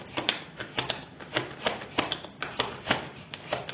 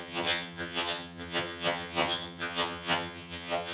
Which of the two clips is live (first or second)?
first